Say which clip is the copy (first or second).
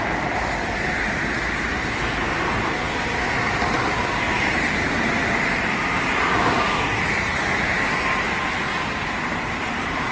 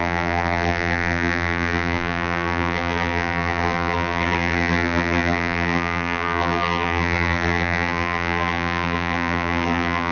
second